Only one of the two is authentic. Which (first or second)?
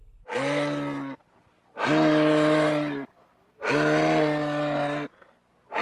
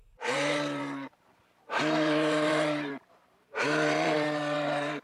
first